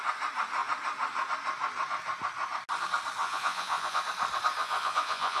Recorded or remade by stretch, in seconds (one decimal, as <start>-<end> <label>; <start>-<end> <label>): 0.0-3.2 recorded; 3.2-4.0 remade; 4.0-4.6 recorded; 4.6-5.4 remade